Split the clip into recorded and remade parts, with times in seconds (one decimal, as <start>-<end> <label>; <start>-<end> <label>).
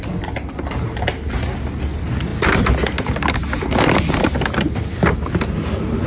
0.0-6.1 recorded